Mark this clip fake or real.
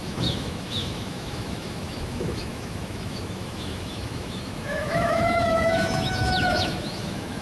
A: fake